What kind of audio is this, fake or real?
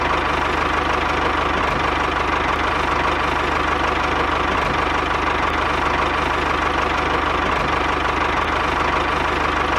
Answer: real